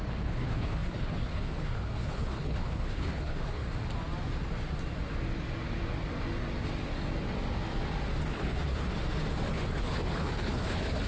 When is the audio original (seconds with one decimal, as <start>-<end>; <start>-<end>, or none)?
3.6-8.2; 8.9-9.5